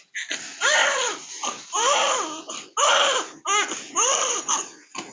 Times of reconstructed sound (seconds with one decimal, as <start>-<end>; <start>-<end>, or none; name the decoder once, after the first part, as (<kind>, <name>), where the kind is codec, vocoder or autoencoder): none